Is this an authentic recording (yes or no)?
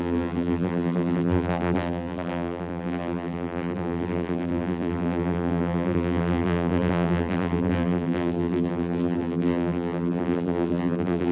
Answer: no